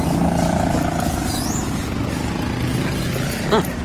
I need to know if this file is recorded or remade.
recorded